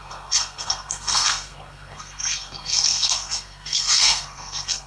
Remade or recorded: remade